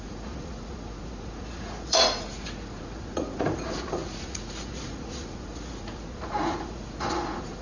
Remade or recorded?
remade